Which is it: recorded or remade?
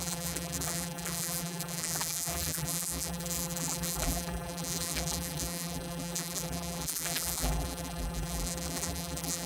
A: remade